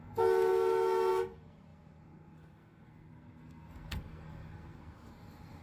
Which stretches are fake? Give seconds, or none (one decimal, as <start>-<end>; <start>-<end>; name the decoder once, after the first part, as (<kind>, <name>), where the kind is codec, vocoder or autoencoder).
0.0-5.6 (codec, SNAC)